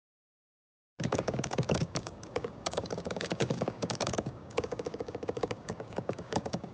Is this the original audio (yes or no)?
no